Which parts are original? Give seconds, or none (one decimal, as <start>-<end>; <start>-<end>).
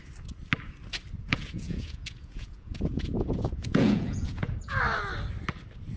0.0-1.2; 4.8-6.0